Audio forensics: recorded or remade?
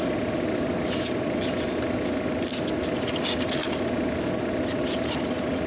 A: recorded